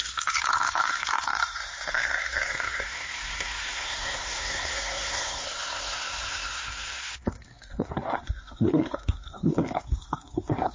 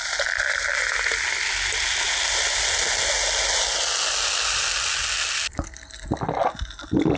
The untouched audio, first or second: second